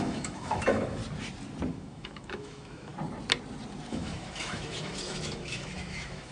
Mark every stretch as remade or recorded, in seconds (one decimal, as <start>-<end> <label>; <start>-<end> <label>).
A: 0.0-1.0 remade; 1.0-1.7 recorded; 1.7-2.9 remade; 2.9-3.9 recorded; 3.9-6.3 remade